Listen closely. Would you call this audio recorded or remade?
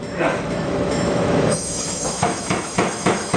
remade